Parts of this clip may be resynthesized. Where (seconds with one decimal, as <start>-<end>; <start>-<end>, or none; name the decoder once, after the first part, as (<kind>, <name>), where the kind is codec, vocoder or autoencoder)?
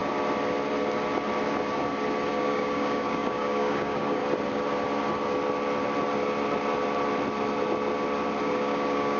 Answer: 2.3-4.2 (codec, DAC); 8.4-9.2